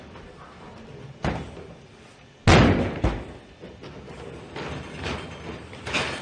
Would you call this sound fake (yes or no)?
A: no